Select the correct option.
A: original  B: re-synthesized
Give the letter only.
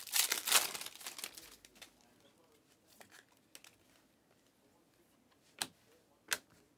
A